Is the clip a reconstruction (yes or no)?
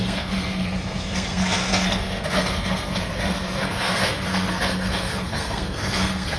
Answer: yes